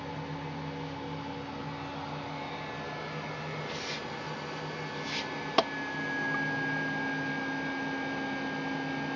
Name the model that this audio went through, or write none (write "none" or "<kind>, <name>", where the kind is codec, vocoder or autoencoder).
none